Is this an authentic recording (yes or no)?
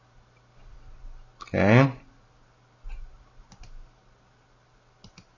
yes